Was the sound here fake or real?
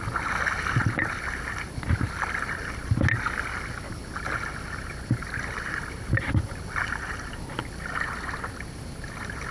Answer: real